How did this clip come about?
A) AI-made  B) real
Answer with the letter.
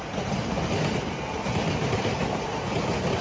B